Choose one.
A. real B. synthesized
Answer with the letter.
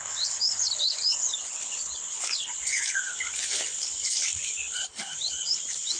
B